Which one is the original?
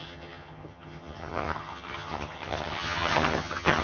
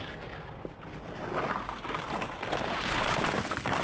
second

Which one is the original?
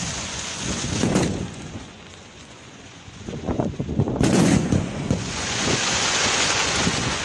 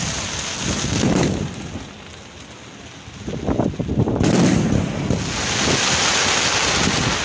second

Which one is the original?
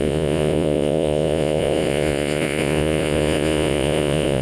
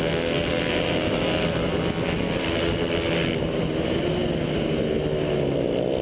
second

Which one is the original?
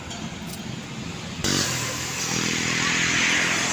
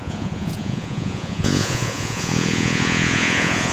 first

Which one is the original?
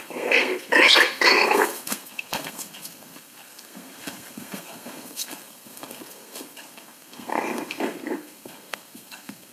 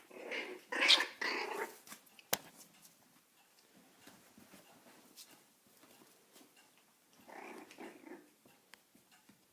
second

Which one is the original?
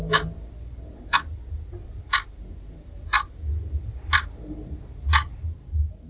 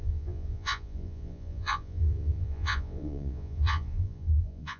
first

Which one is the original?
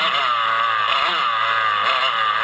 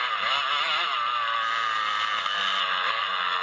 first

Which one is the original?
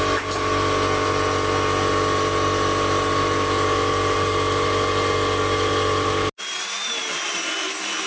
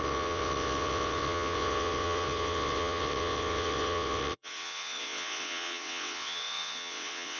first